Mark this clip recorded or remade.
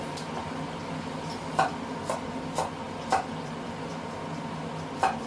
recorded